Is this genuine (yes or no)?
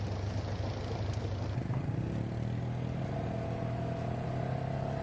yes